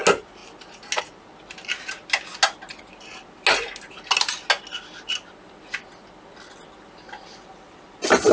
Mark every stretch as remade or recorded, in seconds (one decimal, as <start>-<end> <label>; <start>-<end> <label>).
0.0-8.3 recorded